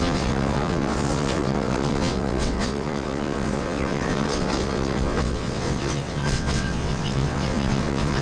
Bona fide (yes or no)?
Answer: no